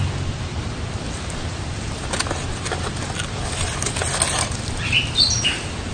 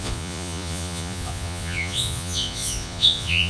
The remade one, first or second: second